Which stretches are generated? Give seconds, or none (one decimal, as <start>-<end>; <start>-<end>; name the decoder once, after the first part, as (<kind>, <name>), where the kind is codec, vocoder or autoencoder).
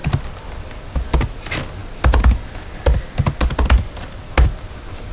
none